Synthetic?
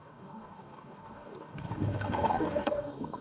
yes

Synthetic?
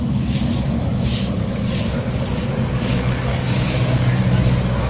yes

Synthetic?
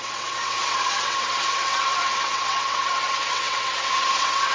yes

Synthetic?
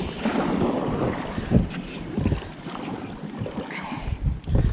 no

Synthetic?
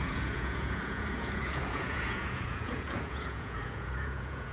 yes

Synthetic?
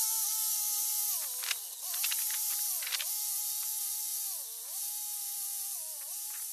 no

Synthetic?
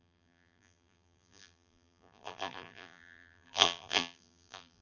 yes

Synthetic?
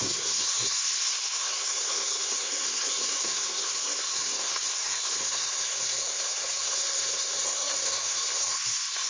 yes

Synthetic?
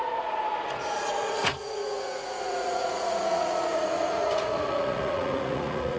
yes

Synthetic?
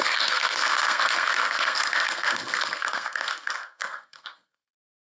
yes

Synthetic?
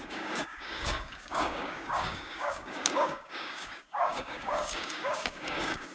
yes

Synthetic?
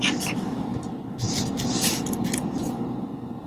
no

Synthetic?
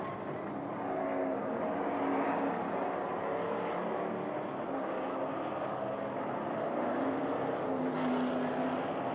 no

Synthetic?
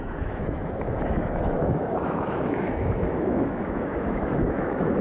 yes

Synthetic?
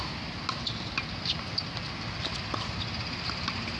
no